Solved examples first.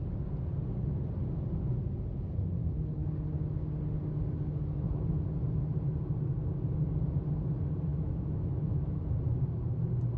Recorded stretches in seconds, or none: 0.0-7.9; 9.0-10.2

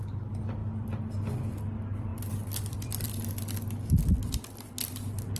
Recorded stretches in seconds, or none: 0.0-0.6; 1.5-2.1; 3.3-4.2

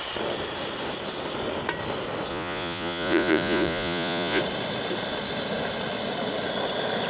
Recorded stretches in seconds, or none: 0.0-2.3; 4.4-7.1

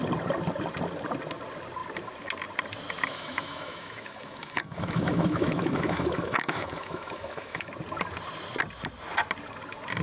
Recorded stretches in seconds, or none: 0.0-3.1; 7.7-10.0

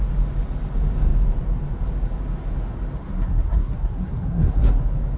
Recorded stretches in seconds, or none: 0.0-3.0; 4.8-5.2